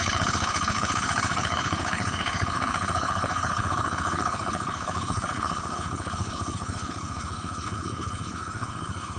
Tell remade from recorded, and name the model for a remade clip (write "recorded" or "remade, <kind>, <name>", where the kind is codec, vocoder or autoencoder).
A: remade, codec, HILCodec